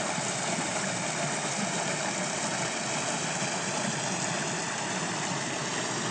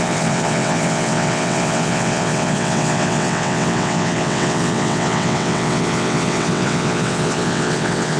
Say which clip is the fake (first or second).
second